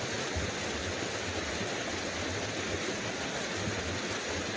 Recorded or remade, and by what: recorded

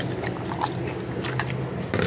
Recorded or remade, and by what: recorded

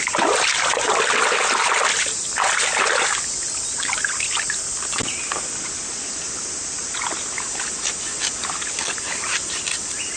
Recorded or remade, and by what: recorded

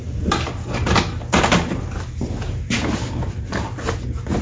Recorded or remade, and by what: recorded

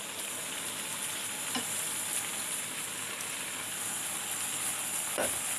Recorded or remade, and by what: recorded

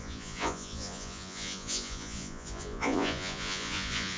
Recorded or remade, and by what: remade, vocoder, Vocos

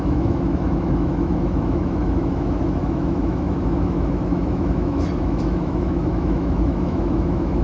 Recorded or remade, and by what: remade, autoencoder, DAC-VAE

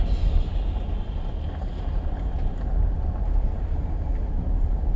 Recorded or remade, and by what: recorded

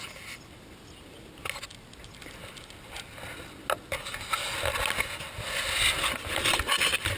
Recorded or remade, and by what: recorded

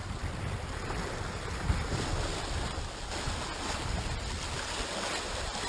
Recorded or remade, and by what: recorded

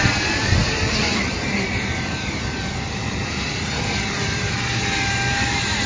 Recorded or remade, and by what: remade, vocoder, BigVGAN v2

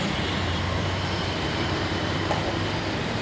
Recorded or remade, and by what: remade, vocoder, BigVGAN v2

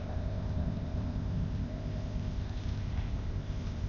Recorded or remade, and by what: remade, codec, ZipCodec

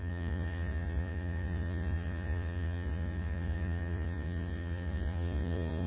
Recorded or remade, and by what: remade, vocoder, Vocos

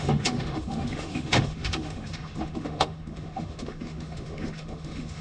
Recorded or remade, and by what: remade, autoencoder, DAC-VAE